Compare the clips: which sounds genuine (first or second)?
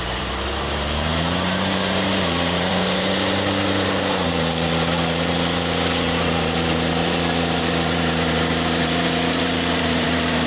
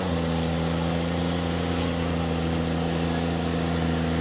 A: second